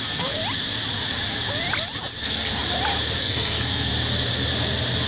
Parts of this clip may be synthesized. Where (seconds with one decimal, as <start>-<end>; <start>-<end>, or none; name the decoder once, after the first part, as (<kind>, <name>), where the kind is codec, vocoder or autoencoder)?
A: 0.0-0.4 (codec, SNAC); 2.2-2.6; 3.2-3.9